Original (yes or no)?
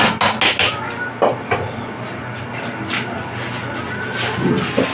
yes